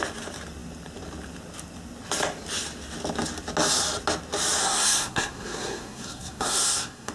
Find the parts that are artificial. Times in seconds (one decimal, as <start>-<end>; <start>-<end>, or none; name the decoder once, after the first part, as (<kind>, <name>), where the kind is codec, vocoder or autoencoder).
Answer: 4.6-7.1 (codec, SNAC)